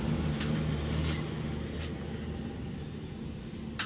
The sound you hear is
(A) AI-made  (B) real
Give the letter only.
B